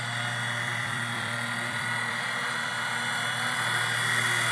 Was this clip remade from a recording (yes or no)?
yes